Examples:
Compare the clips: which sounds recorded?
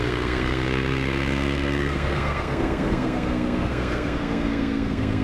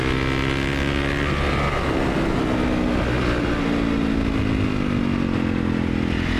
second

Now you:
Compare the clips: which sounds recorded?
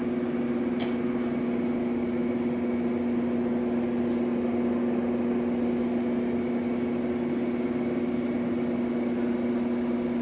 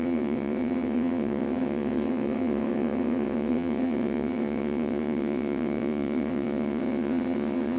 first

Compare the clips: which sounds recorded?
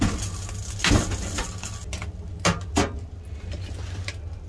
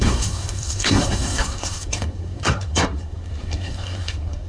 first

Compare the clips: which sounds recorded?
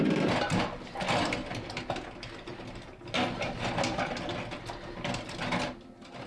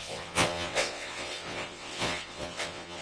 first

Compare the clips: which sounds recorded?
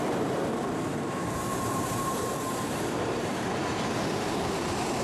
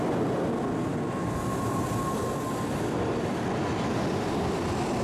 second